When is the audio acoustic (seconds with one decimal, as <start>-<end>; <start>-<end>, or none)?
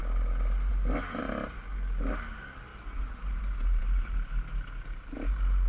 0.0-2.7; 4.3-5.7